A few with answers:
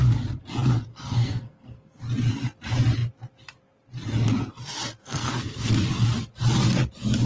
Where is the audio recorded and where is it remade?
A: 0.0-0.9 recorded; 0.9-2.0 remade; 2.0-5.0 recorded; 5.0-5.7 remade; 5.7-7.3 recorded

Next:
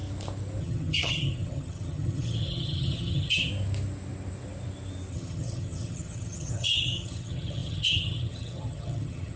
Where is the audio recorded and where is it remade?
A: 0.0-0.6 recorded; 0.6-3.5 remade; 3.5-5.1 recorded; 5.1-9.4 remade